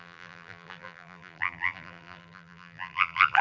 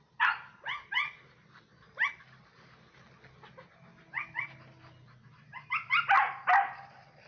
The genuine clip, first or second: second